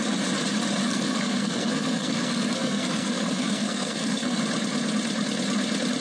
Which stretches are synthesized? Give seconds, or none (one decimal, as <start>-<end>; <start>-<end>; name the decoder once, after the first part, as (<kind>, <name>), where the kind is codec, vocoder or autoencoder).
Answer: 0.8-4.4 (codec, SNAC)